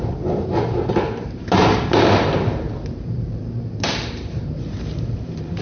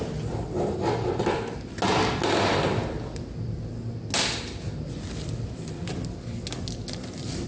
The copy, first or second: first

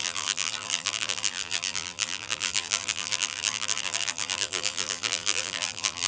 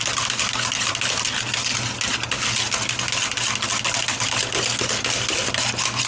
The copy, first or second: first